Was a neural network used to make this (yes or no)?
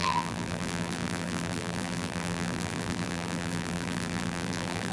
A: yes